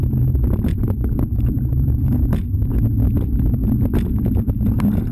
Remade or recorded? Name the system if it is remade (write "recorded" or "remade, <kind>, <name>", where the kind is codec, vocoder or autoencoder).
recorded